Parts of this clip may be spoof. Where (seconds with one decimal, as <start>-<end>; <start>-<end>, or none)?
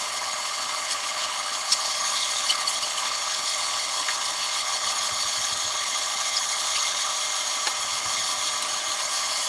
0.0-7.1; 7.8-8.3; 9.0-9.5